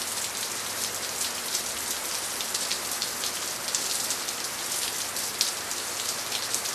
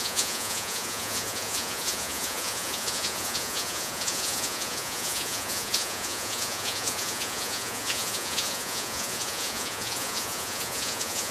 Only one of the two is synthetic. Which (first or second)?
second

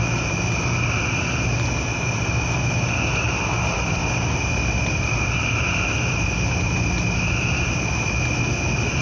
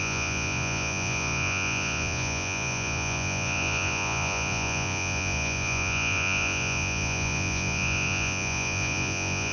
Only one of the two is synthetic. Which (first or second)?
second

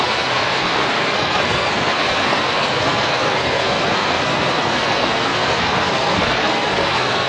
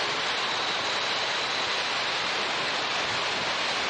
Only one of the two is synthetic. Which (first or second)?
first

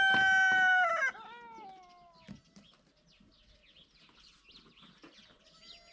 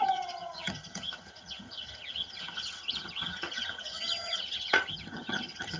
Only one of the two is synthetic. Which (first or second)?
second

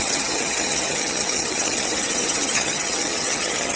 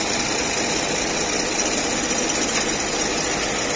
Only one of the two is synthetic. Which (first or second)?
first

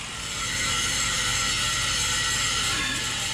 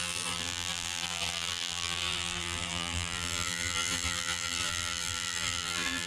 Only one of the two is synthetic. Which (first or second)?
second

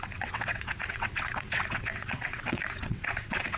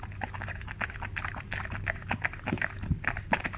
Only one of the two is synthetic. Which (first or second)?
first